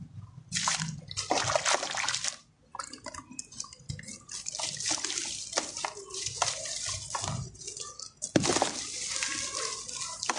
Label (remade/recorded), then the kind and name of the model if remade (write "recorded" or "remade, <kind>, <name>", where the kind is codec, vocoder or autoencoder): recorded